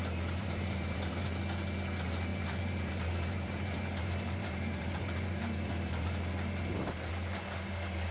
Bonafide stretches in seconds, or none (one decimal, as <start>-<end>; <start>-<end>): 0.0-0.4; 1.3-2.3; 7.1-8.1